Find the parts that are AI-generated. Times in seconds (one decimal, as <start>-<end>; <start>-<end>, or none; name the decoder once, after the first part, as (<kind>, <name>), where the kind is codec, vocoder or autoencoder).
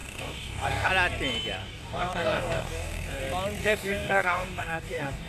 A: 0.0-0.9 (codec, DAC); 1.6-3.2; 3.6-5.3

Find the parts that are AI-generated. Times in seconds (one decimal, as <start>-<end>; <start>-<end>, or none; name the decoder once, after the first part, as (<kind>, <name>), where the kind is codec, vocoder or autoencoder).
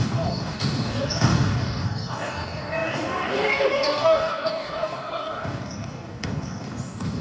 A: 0.0-7.2 (codec, DAC)